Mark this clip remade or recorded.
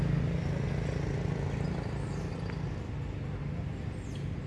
recorded